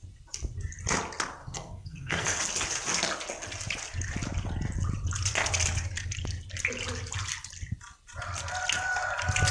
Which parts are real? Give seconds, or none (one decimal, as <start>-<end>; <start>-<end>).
0.0-1.4; 2.4-9.5